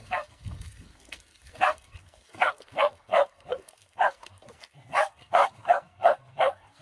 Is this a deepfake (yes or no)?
yes